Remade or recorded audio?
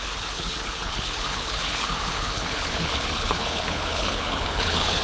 remade